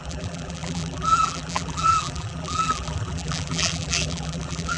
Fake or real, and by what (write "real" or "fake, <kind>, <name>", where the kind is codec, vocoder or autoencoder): fake, vocoder, BigVGAN v2